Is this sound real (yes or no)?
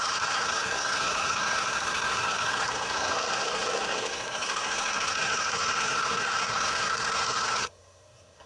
no